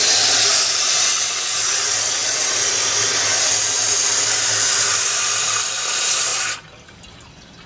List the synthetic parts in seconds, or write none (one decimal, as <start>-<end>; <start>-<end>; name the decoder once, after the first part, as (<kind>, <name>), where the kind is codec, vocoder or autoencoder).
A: 6.3-6.9 (vocoder, BigVGAN v2)